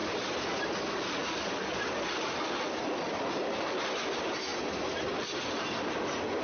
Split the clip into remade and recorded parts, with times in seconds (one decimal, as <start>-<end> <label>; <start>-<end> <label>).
0.0-6.4 recorded